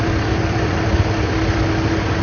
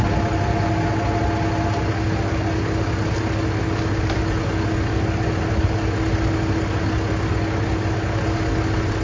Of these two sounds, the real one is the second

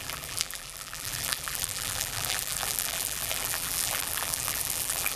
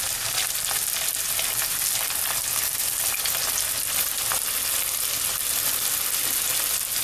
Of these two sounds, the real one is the second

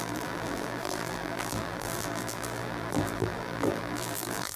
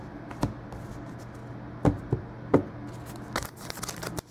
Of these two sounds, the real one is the second